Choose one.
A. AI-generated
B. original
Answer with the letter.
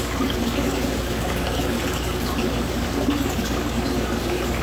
A